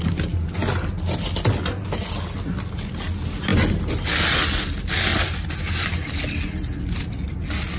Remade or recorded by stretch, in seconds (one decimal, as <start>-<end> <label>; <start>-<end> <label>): 0.0-7.8 recorded